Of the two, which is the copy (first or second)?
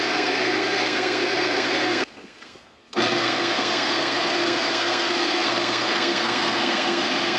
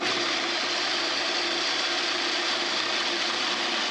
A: first